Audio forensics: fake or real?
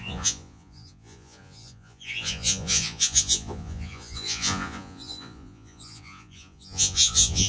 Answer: fake